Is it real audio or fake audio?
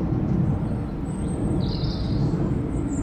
fake